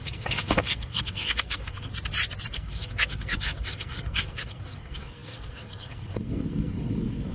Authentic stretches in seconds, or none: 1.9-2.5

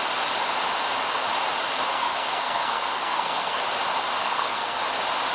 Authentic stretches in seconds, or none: 0.0-1.9; 3.6-4.2; 4.8-5.3